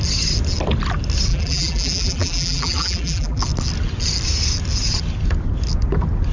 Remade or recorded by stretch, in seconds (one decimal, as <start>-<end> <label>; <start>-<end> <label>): 0.0-1.3 recorded; 1.3-3.4 remade; 3.4-6.3 recorded